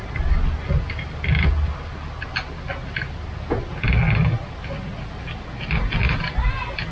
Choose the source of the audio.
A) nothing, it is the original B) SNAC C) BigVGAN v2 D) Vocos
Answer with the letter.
A